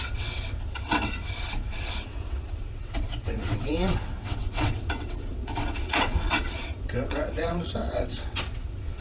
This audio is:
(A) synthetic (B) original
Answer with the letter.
A